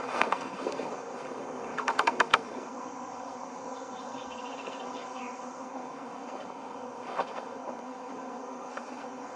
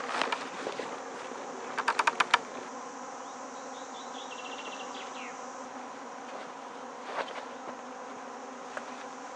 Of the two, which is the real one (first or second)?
second